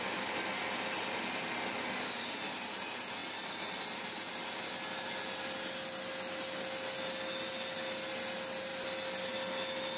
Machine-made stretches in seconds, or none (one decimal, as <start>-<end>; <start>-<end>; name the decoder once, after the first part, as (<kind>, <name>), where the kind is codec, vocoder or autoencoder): none